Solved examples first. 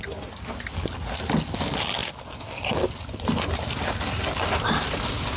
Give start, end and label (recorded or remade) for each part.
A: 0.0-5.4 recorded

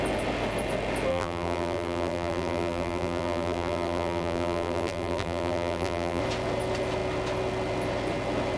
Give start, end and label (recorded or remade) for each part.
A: 0.0-1.1 recorded; 1.1-6.2 remade; 6.2-8.6 recorded

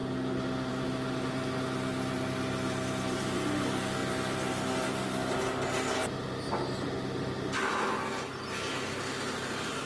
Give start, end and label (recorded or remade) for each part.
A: 0.0-9.9 recorded

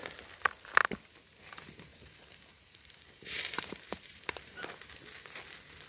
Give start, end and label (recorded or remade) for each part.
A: 0.0-1.9 recorded; 1.9-4.9 remade; 4.9-5.9 recorded